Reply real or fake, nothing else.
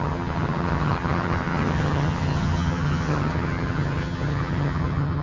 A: fake